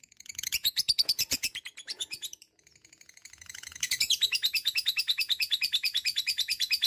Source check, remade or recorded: remade